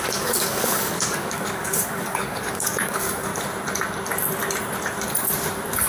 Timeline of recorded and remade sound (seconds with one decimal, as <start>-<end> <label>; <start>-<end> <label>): 0.0-3.3 remade; 3.3-5.9 recorded